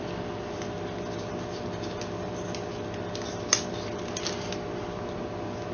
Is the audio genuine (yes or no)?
yes